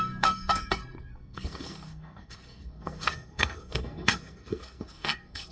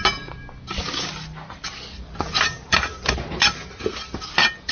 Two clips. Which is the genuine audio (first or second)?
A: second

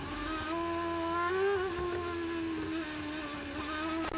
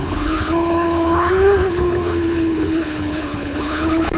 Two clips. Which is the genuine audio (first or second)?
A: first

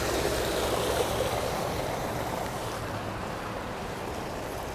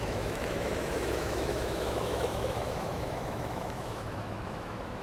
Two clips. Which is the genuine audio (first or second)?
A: first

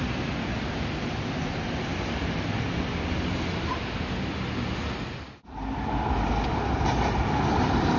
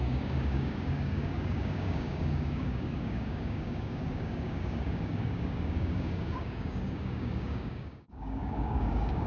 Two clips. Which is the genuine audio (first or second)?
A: first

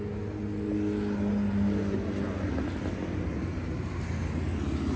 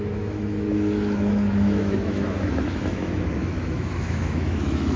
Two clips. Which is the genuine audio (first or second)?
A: first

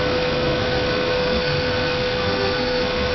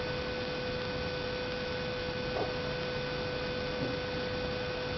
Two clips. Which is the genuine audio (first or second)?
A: second